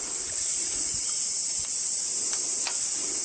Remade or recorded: recorded